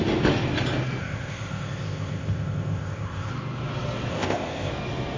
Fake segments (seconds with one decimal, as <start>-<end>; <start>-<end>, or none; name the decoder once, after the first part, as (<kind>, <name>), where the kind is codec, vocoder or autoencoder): 1.0-3.3 (codec, ZipCodec); 4.1-4.7